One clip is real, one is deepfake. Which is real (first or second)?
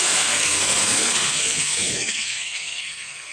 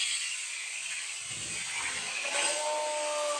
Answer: second